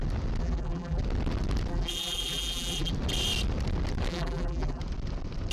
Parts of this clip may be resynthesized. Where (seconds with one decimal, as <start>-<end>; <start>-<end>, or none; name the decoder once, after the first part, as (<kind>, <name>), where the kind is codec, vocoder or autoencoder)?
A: 0.4-1.0 (vocoder, BigVGAN v2); 1.7-2.9; 4.1-4.8